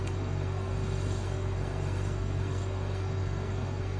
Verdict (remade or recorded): remade